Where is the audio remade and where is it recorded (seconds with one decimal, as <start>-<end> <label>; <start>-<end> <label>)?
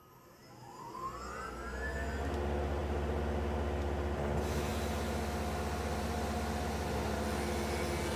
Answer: 0.0-8.2 recorded